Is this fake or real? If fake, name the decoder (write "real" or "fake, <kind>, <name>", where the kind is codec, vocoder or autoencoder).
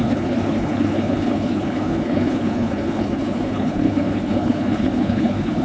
fake, codec, HILCodec